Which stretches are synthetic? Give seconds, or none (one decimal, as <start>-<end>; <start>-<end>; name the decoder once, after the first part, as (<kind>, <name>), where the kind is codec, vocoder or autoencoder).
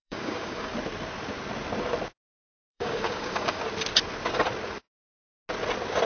0.0-0.7 (codec, DAC); 2.3-3.6